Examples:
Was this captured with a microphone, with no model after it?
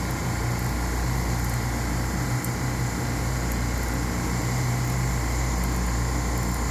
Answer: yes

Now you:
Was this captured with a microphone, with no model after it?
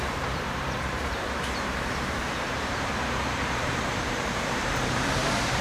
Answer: no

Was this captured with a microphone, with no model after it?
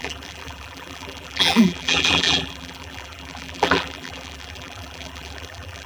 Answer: no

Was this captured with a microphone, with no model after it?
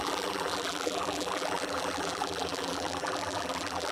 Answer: no